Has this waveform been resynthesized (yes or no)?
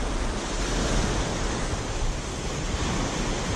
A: no